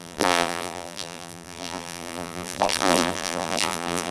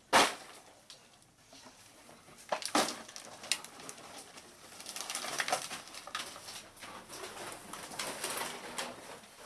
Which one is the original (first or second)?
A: second